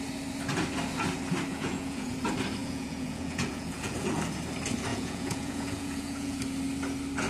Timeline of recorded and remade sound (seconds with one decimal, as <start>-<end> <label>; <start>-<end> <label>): 0.0-1.5 recorded; 1.5-2.1 remade; 2.1-2.6 recorded; 2.6-4.2 remade; 4.2-4.9 recorded; 4.9-6.4 remade; 6.4-7.3 recorded